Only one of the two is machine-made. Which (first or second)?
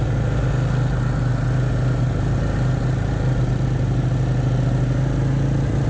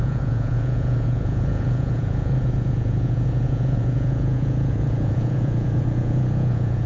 second